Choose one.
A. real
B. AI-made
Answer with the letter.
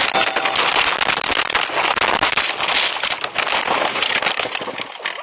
A